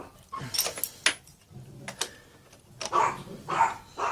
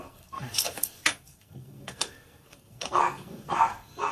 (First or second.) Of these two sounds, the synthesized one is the second